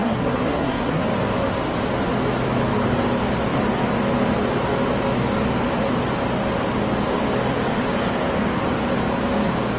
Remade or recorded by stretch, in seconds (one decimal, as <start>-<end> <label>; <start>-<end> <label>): 0.0-1.0 remade; 1.0-9.8 recorded